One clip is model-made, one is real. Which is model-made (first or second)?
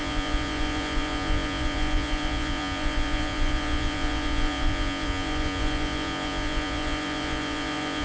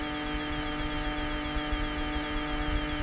first